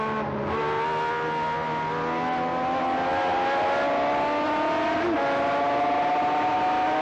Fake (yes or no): no